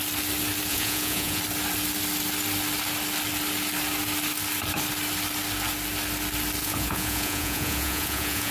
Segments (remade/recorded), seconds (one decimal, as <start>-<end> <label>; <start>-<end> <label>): 0.0-0.7 recorded; 0.7-1.4 remade; 1.4-6.6 recorded; 6.6-8.5 remade